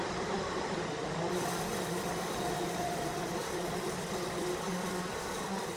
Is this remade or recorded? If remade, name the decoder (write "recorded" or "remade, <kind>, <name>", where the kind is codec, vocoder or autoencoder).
remade, vocoder, BigVGAN v2